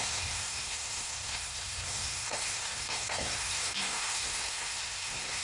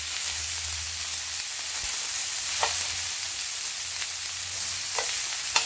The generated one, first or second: first